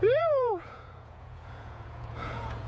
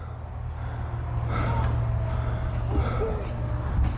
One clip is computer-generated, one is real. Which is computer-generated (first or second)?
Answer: first